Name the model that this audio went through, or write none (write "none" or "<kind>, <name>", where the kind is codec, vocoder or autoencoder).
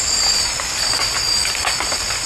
none